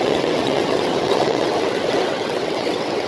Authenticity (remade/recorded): remade